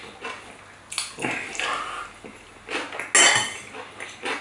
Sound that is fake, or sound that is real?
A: real